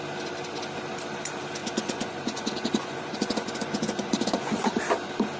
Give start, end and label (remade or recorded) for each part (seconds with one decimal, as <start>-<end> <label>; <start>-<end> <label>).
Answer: 0.0-1.6 recorded; 1.6-4.8 remade; 4.8-5.4 recorded